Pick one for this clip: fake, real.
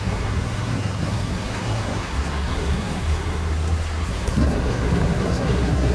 fake